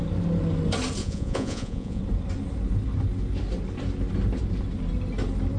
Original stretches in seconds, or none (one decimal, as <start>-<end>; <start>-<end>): 0.0-1.0; 2.0-5.6